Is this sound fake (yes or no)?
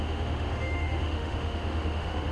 yes